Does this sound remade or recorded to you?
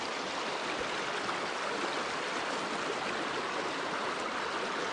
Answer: recorded